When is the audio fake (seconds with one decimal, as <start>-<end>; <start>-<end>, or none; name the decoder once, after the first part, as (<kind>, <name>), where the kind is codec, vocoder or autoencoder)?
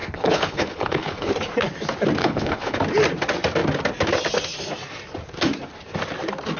0.0-1.3 (codec, HILCodec); 2.2-2.8